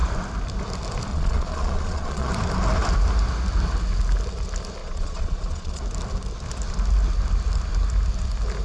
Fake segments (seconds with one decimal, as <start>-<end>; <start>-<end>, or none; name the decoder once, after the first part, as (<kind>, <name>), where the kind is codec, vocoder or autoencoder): 1.1-2.3 (vocoder, Vocos); 4.8-5.8